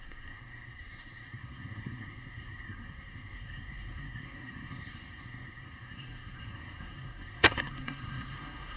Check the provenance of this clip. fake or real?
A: fake